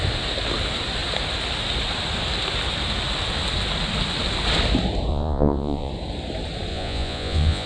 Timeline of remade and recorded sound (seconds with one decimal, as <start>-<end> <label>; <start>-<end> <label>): 0.0-5.1 recorded; 5.1-5.9 remade; 5.9-6.7 recorded; 6.7-7.7 remade